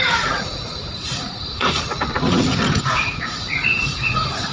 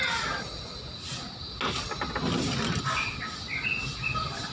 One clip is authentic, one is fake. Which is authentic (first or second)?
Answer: second